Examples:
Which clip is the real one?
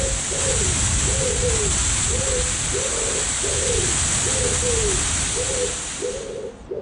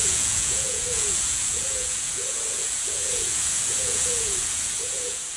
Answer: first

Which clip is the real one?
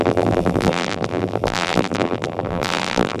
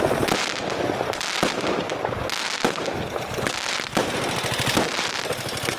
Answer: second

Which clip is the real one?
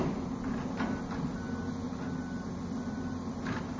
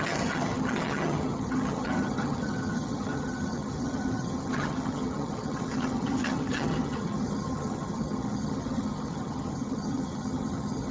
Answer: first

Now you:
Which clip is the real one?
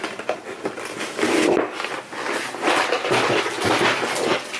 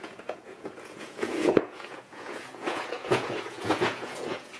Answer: first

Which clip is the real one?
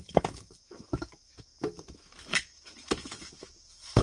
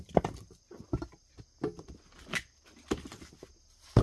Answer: second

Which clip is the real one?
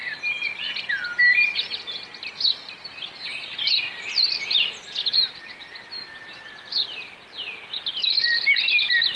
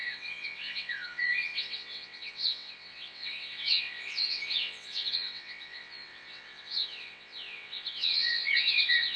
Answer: first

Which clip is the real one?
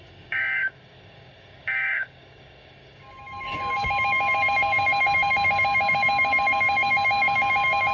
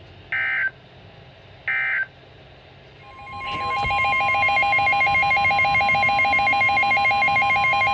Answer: second